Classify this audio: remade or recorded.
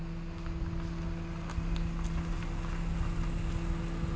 recorded